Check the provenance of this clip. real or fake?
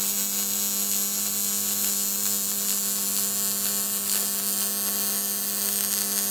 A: real